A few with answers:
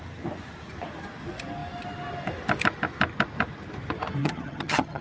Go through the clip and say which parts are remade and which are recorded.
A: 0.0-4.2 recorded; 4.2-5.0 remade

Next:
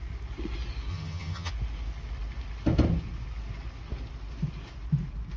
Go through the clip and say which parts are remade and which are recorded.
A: 0.0-0.9 recorded; 0.9-1.5 remade; 1.5-5.4 recorded

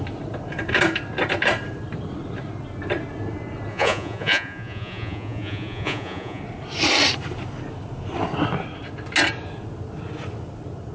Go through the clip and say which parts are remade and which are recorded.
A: 0.0-3.7 recorded; 3.7-6.4 remade; 6.4-10.9 recorded

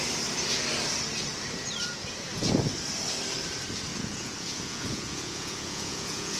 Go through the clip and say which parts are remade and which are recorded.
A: 0.0-3.9 recorded; 3.9-6.4 remade

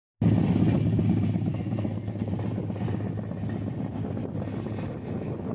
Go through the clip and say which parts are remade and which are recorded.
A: 0.0-1.5 recorded; 1.5-2.3 remade; 2.3-5.5 recorded

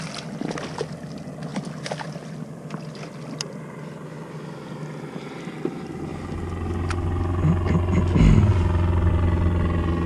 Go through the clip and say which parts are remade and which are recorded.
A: 0.0-10.1 recorded

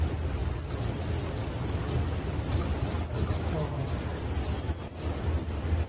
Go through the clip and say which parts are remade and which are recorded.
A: 0.0-5.9 recorded